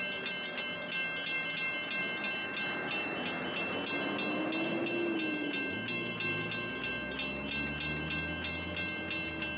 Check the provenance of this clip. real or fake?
real